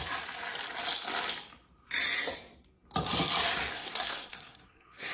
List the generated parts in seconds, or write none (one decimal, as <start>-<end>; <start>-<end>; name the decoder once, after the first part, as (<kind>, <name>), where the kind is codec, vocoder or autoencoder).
3.7-5.1 (codec, SNAC)